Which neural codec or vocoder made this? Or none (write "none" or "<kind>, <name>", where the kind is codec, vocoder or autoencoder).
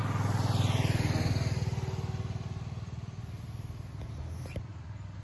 none